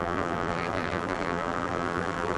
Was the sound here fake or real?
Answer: fake